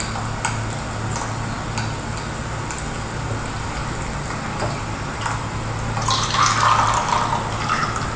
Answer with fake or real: real